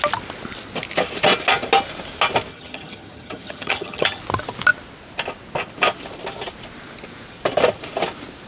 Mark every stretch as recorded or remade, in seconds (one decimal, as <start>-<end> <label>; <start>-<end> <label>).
0.0-2.5 recorded; 2.5-4.2 remade; 4.2-8.5 recorded